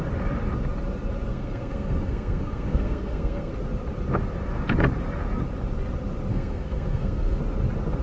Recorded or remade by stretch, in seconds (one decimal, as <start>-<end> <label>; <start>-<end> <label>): 0.0-1.3 recorded; 1.3-3.5 remade; 3.5-6.3 recorded; 6.3-7.4 remade; 7.4-8.0 recorded